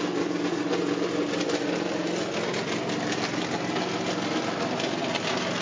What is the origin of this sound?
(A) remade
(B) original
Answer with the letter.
B